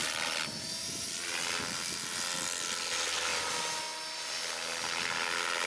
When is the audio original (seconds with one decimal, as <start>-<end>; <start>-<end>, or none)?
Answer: 0.0-5.7